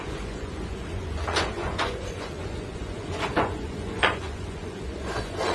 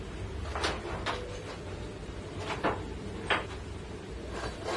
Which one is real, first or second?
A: second